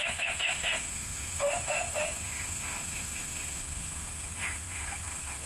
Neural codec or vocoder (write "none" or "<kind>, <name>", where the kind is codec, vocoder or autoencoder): autoencoder, DAC-VAE